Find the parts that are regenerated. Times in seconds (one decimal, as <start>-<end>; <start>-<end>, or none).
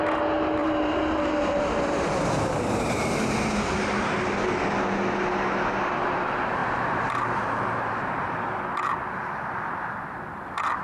0.6-3.8; 6.6-8.6